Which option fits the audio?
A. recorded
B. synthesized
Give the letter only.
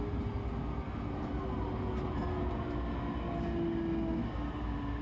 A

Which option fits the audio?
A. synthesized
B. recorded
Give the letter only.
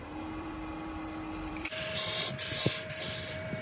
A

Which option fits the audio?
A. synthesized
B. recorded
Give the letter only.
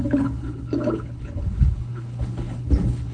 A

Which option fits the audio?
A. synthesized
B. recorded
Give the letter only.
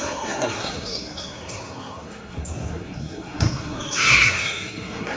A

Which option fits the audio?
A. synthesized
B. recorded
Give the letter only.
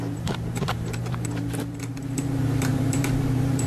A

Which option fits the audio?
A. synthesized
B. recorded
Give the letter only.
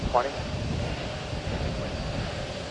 B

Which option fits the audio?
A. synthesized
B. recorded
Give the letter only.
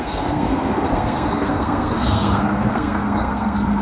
A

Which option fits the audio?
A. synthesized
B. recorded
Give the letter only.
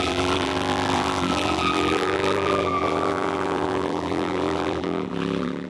A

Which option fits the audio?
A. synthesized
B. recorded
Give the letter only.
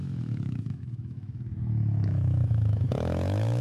A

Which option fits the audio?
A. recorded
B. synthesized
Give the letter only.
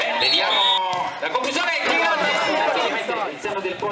A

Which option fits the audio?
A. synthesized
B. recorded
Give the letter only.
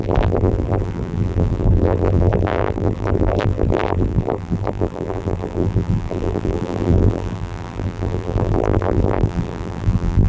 A